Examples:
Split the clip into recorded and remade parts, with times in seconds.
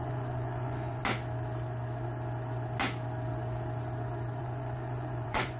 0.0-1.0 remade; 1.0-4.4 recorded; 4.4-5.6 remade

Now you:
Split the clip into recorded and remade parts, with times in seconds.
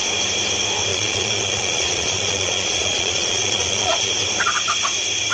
0.0-0.9 recorded; 0.9-4.1 remade; 4.1-5.3 recorded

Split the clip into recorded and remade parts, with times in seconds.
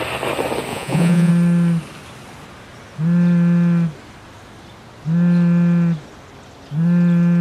0.0-0.7 recorded; 0.7-1.3 remade; 1.3-7.4 recorded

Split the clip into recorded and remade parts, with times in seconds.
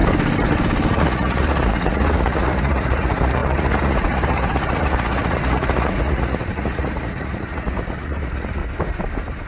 0.0-0.9 recorded; 0.9-8.6 remade; 8.6-9.5 recorded